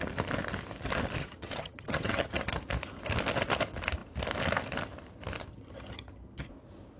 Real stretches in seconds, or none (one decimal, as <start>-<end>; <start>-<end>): 0.0-1.2; 2.5-5.5; 6.5-7.0